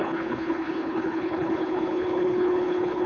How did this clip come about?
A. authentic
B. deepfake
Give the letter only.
B